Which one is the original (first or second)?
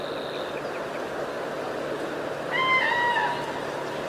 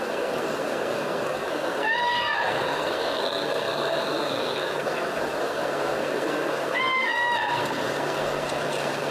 first